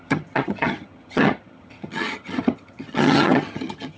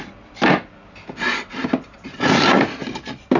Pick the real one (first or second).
second